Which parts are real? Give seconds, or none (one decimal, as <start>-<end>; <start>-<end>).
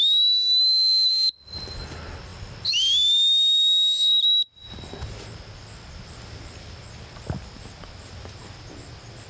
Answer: 0.0-9.3